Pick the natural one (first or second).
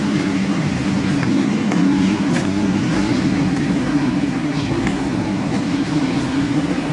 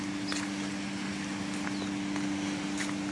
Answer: second